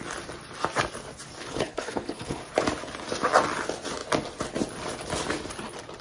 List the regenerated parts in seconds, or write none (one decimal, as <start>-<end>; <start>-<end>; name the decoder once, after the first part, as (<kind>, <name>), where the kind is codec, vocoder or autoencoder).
1.4-2.4 (codec, HILCodec)